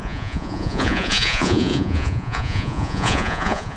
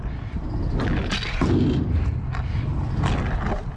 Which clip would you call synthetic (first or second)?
first